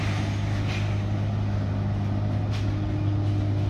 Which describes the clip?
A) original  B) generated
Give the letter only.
A